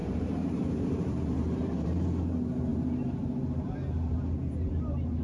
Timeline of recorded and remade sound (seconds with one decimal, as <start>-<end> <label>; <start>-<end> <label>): 0.0-2.2 remade; 2.2-2.7 recorded; 2.7-3.3 remade; 3.3-5.2 recorded

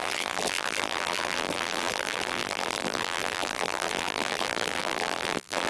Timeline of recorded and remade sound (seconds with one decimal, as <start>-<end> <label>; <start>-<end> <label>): 0.0-5.7 remade

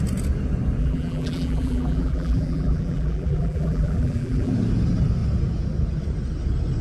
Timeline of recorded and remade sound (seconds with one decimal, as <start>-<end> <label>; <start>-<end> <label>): 0.0-0.8 recorded; 0.8-4.5 remade; 4.5-6.8 recorded

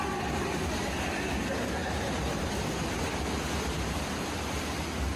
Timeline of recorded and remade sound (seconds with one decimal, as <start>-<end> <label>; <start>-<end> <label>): 0.0-1.8 recorded; 1.8-2.5 remade; 2.5-5.2 recorded

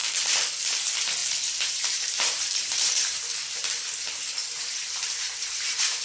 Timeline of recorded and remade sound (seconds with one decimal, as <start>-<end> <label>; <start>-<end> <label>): 0.0-1.2 recorded; 1.2-3.2 remade; 3.2-4.4 recorded; 4.4-6.0 remade

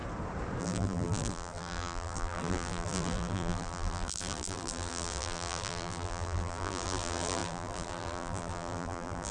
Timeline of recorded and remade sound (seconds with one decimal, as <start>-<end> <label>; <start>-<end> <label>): 0.0-0.6 recorded; 0.6-9.3 remade

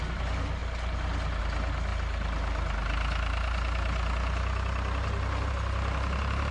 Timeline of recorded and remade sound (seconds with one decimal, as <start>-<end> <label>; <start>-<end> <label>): 0.0-6.5 recorded